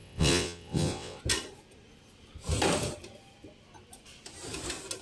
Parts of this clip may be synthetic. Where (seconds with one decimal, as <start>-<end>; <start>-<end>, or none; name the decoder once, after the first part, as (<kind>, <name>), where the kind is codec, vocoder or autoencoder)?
0.0-1.2 (vocoder, WaveNeXt)